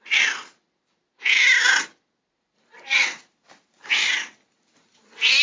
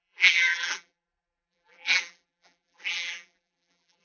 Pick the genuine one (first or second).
first